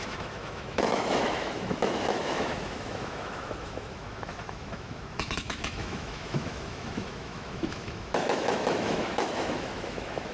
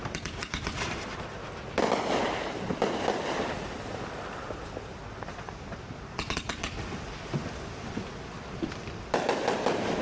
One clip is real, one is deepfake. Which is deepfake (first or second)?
first